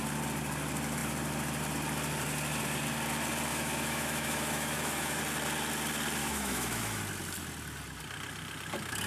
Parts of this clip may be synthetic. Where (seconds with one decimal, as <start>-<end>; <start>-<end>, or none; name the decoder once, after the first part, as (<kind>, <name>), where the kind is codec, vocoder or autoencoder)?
3.5-5.2 (autoencoder, DAC-VAE); 6.2-7.0